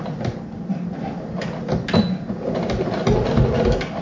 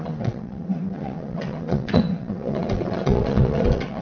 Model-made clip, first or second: second